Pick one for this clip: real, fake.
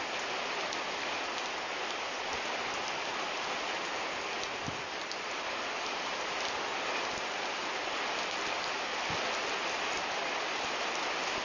real